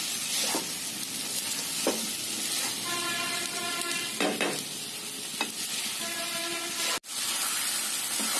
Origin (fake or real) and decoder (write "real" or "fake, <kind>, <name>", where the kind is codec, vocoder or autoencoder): real